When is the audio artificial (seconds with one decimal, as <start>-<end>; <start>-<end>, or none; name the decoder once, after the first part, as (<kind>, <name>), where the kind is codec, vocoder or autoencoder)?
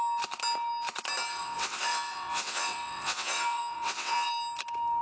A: 1.3-4.3 (vocoder, WaveNeXt)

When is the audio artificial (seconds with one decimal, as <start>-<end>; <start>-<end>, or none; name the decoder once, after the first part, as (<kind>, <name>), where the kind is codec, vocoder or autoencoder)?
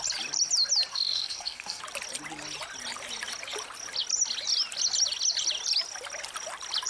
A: 0.9-1.8 (codec, SNAC)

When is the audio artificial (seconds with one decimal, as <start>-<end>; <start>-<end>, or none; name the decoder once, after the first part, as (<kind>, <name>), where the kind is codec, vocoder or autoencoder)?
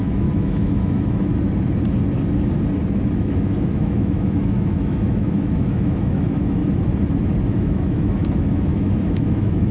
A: 0.0-1.3 (autoencoder, DAC-VAE); 3.1-6.6; 7.5-9.7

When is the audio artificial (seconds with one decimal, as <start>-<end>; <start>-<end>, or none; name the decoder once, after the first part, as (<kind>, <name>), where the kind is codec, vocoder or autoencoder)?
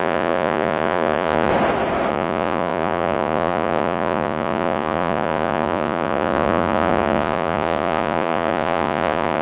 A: 0.0-1.5 (vocoder, Vocos); 2.1-9.4